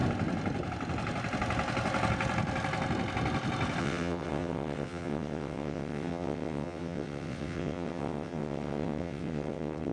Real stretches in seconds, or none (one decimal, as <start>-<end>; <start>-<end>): 0.0-3.8